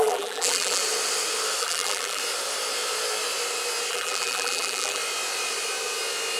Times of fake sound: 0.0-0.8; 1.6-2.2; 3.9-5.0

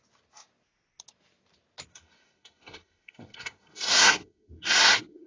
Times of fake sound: 1.9-5.3

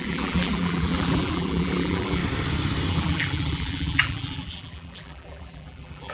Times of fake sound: 0.0-2.2; 2.9-6.1